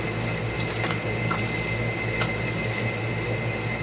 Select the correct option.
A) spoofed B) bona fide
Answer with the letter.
B